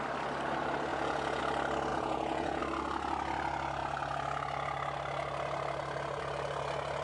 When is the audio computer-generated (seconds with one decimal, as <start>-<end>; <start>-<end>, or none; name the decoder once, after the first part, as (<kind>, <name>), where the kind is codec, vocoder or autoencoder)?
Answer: 0.9-1.4 (vocoder, Vocos); 1.9-2.6